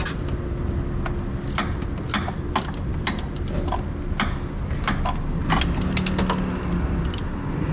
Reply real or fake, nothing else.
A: real